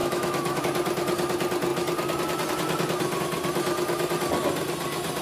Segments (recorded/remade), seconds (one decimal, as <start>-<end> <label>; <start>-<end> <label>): 0.0-0.6 remade; 0.6-5.2 recorded